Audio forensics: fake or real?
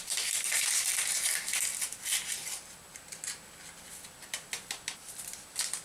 real